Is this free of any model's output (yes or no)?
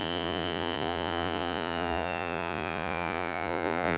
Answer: no